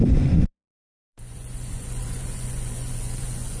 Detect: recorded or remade remade